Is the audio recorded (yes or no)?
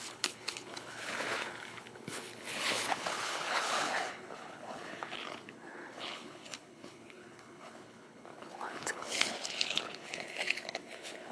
no